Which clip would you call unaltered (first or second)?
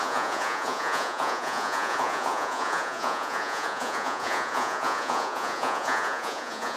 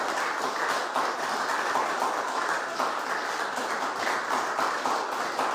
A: second